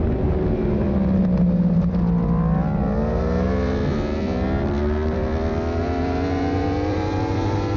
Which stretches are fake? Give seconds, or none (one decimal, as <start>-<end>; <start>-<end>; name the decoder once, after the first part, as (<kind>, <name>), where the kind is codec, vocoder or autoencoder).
none